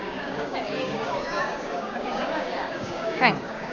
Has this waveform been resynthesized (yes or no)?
yes